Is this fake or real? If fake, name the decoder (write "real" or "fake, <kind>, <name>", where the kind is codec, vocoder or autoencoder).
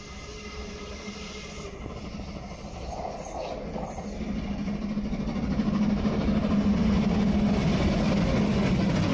real